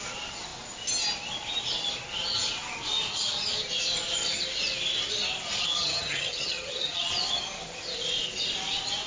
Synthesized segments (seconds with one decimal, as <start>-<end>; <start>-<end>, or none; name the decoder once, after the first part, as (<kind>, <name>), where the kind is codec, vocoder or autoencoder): 5.8-7.1 (vocoder, HiFi-GAN)